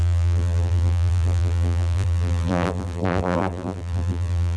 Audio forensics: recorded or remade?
remade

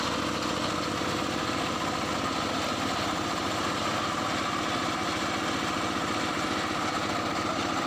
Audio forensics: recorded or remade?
recorded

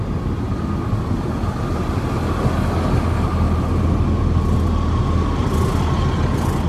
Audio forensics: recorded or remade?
recorded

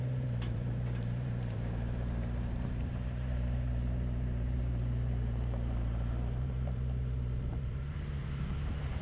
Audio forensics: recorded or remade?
remade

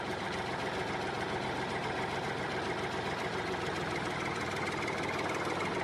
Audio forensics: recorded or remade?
remade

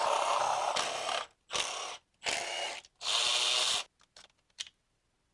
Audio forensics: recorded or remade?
recorded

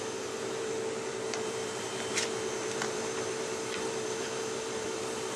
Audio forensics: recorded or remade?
remade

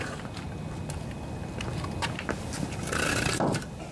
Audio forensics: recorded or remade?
recorded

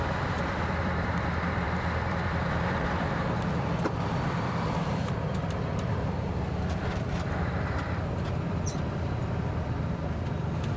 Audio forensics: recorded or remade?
remade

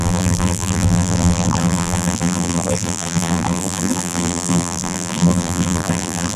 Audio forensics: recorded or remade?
remade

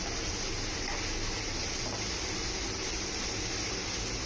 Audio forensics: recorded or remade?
recorded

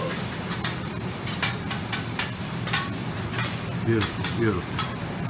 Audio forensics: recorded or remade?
remade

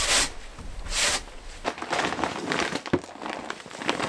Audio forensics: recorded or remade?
recorded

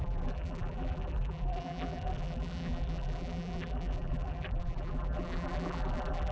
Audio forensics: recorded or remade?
remade